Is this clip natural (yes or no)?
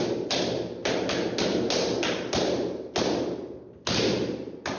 yes